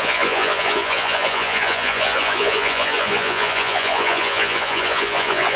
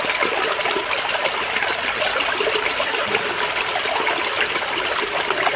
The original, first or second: second